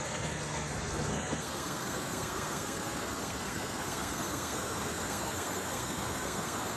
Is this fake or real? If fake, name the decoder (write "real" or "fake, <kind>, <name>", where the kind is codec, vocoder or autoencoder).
fake, codec, SNAC